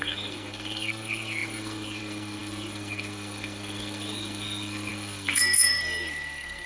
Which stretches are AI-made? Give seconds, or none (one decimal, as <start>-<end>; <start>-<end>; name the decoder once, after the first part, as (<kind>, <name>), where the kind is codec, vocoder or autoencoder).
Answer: 0.0-6.7 (codec, SNAC)

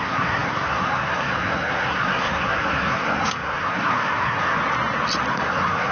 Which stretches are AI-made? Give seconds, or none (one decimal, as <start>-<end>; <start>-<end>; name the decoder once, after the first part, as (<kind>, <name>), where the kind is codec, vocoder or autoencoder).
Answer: 0.0-4.6 (codec, SNAC); 5.3-5.9